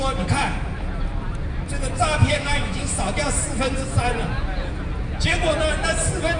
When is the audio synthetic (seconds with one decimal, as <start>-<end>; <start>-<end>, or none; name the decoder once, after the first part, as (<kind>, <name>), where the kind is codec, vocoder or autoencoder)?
2.2-3.0 (autoencoder, DAC-VAE)

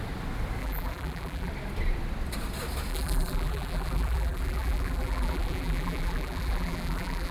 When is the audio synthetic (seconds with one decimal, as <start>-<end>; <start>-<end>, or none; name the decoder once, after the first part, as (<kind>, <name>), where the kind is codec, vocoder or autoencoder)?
0.6-1.5 (vocoder, BigVGAN v2); 2.9-7.3